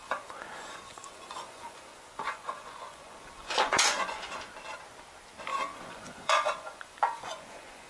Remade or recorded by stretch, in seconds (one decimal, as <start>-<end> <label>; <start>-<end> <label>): 0.0-4.4 remade; 4.4-5.5 recorded; 5.5-7.9 remade

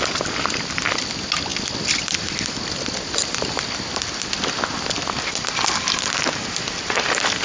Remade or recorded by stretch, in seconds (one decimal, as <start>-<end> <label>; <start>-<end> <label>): 0.0-7.4 recorded

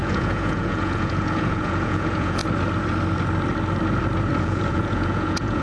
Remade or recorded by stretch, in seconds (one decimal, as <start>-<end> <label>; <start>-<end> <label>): 0.0-2.4 remade; 2.4-4.4 recorded; 4.4-5.6 remade

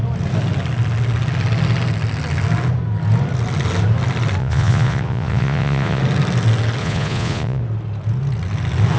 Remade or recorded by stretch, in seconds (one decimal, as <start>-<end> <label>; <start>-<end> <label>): 0.0-4.4 recorded; 4.4-6.0 remade; 6.0-6.8 recorded; 6.8-7.6 remade; 7.6-9.0 recorded

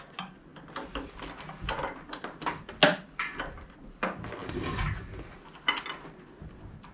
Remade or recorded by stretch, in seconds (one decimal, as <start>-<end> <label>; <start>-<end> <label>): 0.0-6.9 recorded

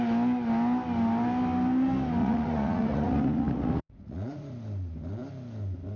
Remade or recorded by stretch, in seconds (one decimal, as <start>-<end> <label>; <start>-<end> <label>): 0.0-2.2 recorded; 2.2-4.5 remade; 4.5-6.0 recorded